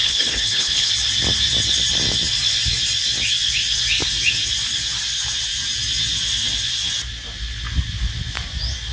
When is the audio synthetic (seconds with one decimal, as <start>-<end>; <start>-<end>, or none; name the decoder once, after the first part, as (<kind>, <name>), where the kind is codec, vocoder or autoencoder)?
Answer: 0.0-0.9 (codec, HILCodec)